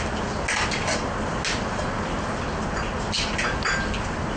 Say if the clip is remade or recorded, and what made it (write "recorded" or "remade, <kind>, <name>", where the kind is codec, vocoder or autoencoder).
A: recorded